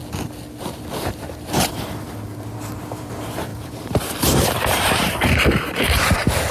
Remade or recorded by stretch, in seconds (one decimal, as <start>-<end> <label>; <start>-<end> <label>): 0.0-0.6 recorded; 0.6-6.5 remade